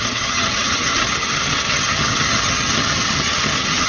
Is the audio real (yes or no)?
no